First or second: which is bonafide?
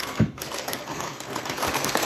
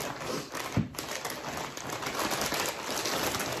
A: second